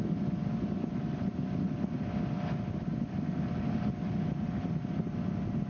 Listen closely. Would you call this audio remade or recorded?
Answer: recorded